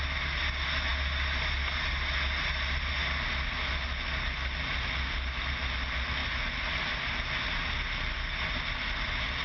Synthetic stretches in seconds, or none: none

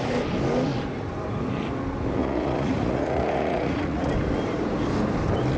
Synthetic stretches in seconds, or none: 2.2-4.1 (vocoder, Vocos)

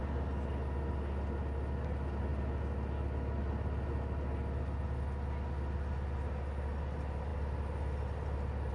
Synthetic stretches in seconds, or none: none

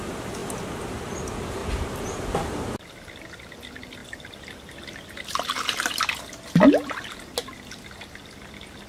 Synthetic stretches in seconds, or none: 1.6-2.7 (vocoder, BigVGAN v2)

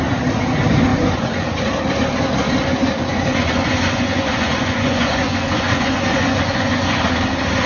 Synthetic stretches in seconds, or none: 0.9-1.6 (vocoder, Vocos); 3.0-7.0

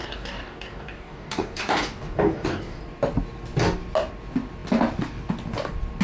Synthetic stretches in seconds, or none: 0.0-2.8 (codec, DAC)